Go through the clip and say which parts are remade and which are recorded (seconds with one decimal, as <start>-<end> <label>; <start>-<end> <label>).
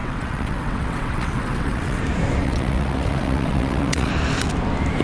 0.0-2.0 remade; 2.0-2.4 recorded; 2.4-4.1 remade; 4.1-5.0 recorded